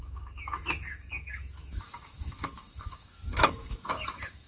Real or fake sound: fake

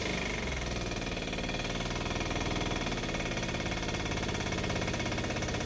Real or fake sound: real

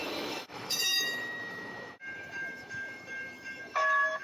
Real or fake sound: fake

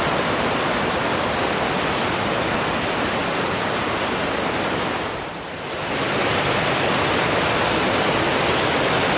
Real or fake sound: real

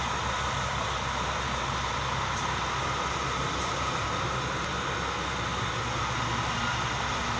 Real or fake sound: real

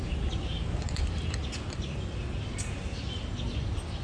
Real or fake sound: real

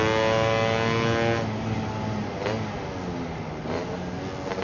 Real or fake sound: real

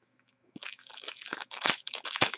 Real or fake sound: fake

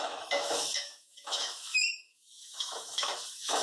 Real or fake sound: fake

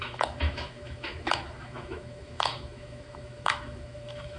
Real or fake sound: fake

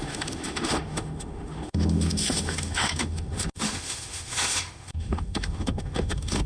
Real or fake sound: fake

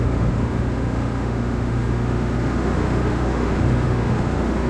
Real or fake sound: fake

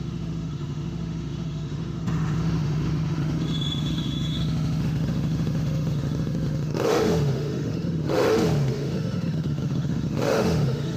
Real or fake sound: fake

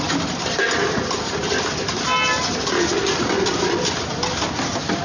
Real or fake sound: real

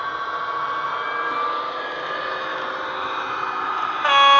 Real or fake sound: real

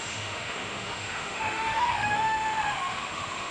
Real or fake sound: fake